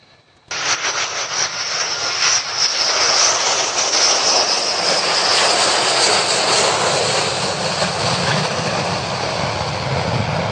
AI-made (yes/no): no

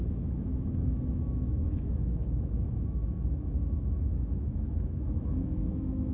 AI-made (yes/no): yes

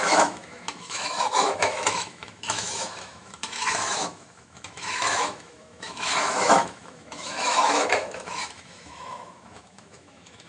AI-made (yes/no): yes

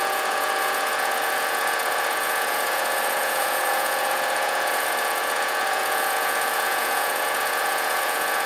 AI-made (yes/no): yes